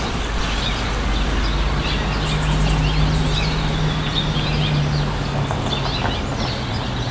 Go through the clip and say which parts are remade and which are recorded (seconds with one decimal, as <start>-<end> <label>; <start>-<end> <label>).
0.0-7.1 recorded